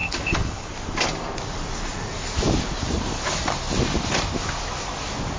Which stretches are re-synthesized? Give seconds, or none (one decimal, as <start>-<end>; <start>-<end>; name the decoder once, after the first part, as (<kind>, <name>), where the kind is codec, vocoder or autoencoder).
0.0-0.7 (codec, HILCodec)